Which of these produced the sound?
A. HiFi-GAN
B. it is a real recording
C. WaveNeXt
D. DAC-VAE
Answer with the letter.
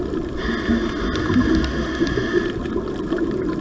B